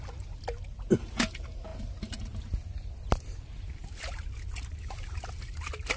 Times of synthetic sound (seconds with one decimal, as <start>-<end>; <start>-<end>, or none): none